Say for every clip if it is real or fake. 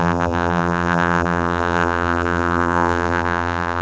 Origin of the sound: fake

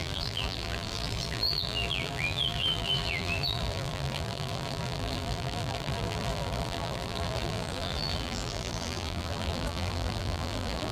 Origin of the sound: fake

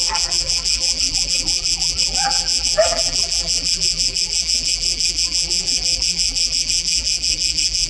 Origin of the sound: fake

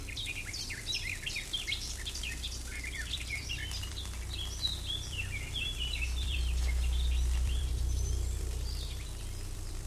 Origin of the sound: fake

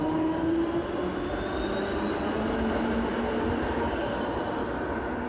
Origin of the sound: real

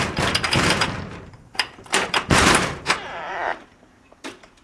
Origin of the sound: fake